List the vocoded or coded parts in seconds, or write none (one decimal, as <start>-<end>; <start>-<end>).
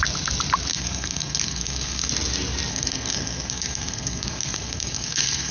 0.7-2.1; 2.7-5.5